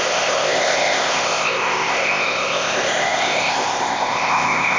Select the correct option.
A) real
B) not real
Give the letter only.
B